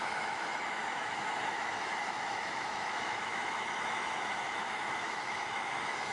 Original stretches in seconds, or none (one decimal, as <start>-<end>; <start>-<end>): none